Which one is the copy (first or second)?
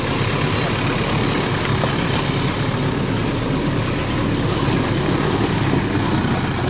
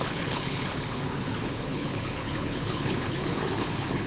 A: second